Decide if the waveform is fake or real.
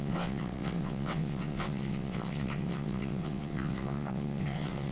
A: fake